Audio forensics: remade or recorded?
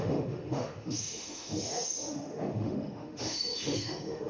remade